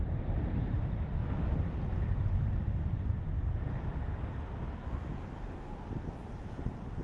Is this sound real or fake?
real